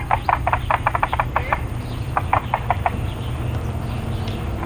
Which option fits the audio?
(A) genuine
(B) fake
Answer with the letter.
A